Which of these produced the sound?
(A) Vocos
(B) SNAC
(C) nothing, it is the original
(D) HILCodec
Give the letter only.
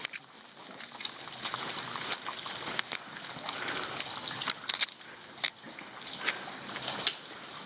C